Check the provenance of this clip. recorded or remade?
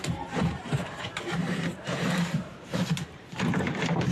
remade